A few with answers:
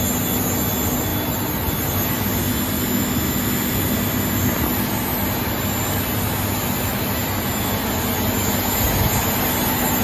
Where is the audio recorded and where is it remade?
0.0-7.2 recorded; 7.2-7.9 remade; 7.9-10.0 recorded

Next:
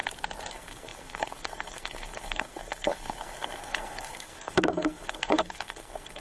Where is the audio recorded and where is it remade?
0.0-0.5 recorded; 0.5-6.2 remade

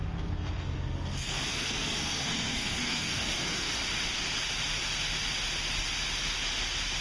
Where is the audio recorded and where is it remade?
0.0-3.8 remade; 3.8-7.0 recorded